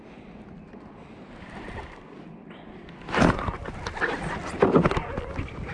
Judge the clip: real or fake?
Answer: real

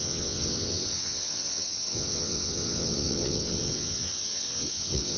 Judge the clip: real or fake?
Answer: fake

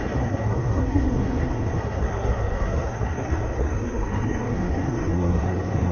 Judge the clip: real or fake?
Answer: fake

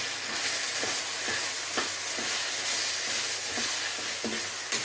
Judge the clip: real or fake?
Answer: real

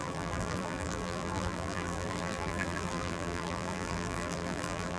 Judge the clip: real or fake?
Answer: fake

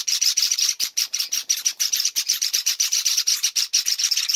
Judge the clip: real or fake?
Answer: fake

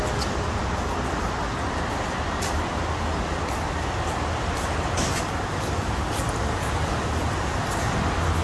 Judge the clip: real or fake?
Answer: real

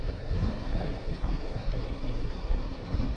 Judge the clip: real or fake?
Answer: fake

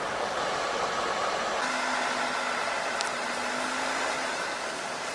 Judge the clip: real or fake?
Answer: real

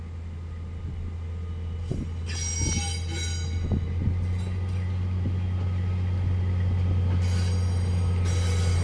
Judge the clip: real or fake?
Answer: real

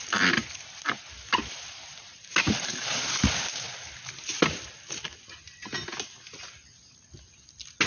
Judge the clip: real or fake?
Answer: real